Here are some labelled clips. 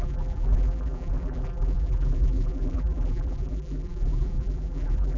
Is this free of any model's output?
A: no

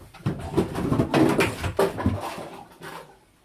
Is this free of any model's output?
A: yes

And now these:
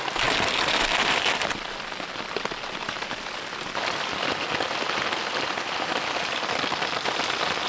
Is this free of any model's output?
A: yes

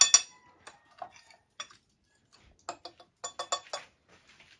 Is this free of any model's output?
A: yes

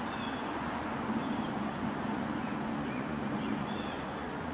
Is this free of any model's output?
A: no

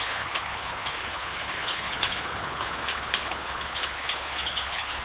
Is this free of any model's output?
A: no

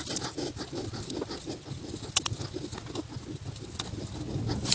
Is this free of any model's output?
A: yes